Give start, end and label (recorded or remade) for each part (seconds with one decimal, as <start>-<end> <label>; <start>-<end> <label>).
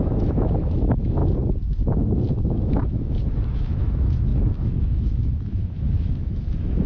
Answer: 0.0-1.2 remade; 1.2-2.4 recorded; 2.4-6.9 remade